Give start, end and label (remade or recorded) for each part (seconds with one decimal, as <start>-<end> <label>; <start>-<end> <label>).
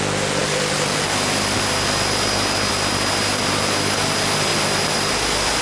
0.0-5.6 recorded